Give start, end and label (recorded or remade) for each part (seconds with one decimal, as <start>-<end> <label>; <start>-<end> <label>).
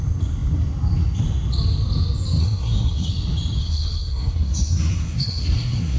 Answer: 0.0-2.4 recorded; 2.4-3.1 remade; 3.1-3.6 recorded; 3.6-6.0 remade